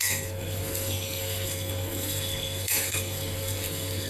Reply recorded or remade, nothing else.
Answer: remade